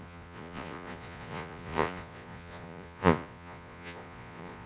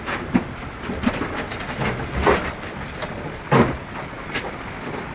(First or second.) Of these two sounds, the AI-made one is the first